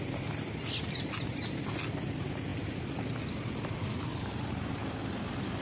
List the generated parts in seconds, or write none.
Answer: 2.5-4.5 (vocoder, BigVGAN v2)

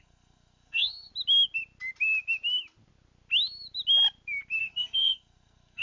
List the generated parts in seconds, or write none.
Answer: 0.0-1.1 (codec, SNAC); 4.6-5.8

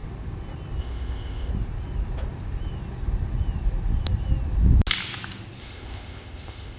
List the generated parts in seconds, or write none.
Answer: 0.8-1.5 (codec, ZipCodec); 5.6-6.8

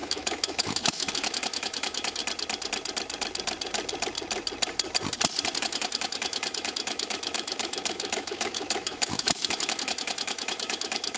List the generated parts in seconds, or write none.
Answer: 0.0-2.2 (autoencoder, DAC-VAE); 5.6-11.2

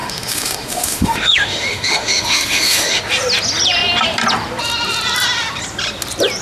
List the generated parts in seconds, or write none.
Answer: 0.0-3.0 (autoencoder, DAC-VAE)

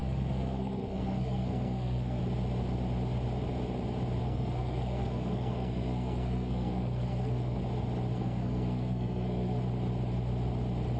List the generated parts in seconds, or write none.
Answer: 0.0-2.2 (codec, SNAC); 4.2-7.6; 8.1-9.6

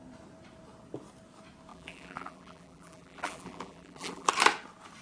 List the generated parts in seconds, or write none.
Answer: 1.7-4.3 (vocoder, BigVGAN v2)